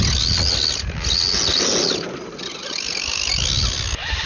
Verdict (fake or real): real